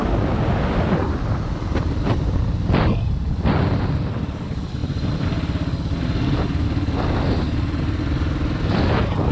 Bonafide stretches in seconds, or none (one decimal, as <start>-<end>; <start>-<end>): 0.0-9.3